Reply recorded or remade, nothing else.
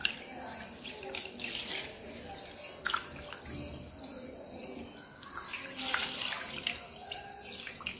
recorded